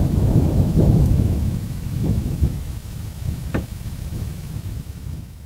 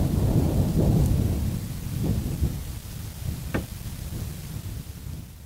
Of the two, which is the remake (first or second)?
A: first